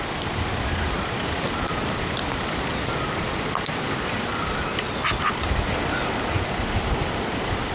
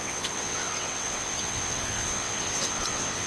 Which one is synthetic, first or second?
second